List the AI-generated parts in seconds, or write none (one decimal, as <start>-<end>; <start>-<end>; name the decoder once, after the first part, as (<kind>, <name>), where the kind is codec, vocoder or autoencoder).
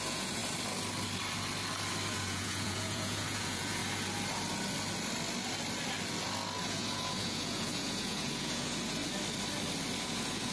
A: 0.0-0.4 (vocoder, Vocos); 2.1-3.8; 6.6-9.0; 10.0-10.5